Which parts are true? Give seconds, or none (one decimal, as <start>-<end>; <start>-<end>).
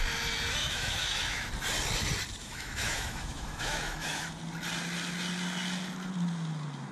0.0-0.6; 1.5-2.4; 4.3-6.9